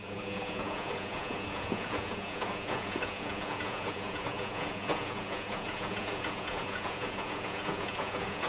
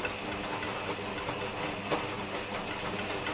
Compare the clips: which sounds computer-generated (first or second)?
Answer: first